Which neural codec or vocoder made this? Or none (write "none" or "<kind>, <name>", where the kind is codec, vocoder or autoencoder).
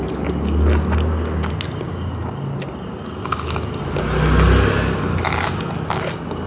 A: none